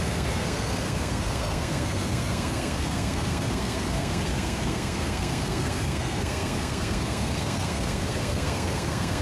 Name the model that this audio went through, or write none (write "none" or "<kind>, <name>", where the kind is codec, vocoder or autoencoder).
codec, SNAC